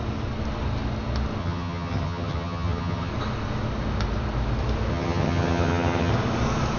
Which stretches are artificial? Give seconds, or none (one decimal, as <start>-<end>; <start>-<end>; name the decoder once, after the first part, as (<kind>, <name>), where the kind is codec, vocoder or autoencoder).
1.4-3.1 (vocoder, HiFi-GAN); 4.9-6.1